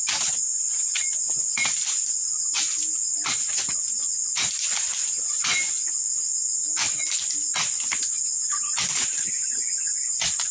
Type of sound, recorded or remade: recorded